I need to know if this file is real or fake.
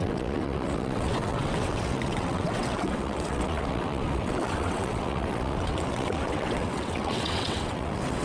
fake